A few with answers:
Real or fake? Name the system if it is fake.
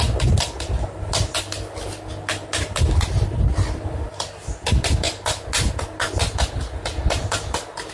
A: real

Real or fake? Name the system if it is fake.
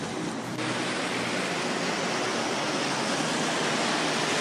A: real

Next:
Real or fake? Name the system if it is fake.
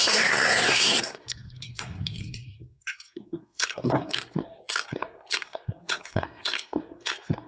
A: fake, codec, SNAC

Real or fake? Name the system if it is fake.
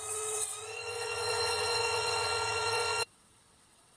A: fake, vocoder, WaveNeXt